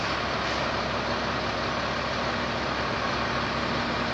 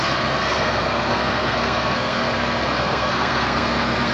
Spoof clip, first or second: second